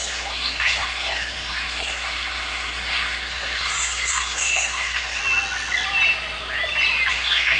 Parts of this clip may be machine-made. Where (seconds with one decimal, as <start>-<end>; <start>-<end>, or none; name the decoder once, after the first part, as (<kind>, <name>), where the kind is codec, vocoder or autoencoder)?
0.0-5.2 (codec, SNAC); 7.1-7.6

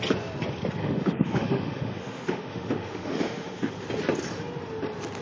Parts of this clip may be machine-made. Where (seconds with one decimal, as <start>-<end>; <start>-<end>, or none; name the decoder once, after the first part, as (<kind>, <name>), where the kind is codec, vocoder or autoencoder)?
0.8-3.7 (autoencoder, DAC-VAE)

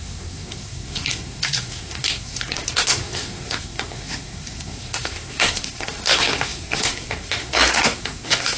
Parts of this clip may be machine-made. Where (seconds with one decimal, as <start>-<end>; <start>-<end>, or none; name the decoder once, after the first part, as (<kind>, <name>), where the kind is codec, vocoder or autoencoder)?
0.0-8.6 (codec, SNAC)

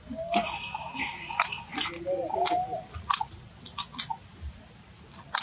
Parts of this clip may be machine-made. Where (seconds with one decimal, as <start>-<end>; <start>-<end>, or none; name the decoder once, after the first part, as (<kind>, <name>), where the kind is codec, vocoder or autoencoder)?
none

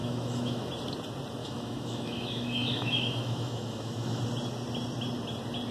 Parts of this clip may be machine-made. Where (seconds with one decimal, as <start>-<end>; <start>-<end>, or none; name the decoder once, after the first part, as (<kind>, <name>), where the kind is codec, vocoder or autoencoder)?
0.0-0.7 (autoencoder, DAC-VAE); 1.4-4.2